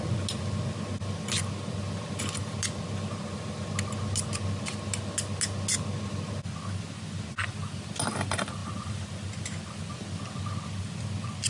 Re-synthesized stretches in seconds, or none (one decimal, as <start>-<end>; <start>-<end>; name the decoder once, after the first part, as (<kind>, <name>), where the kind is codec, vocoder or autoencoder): none